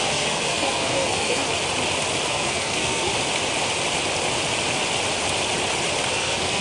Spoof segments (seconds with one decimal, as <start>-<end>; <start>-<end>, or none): 0.0-1.4; 2.3-3.1; 6.1-6.6